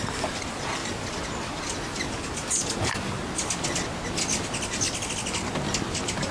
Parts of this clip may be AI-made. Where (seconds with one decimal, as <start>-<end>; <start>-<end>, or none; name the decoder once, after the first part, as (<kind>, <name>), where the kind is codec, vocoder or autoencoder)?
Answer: none